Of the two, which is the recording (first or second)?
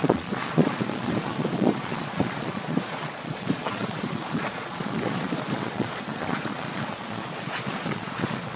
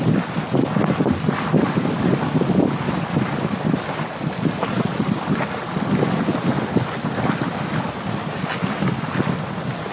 second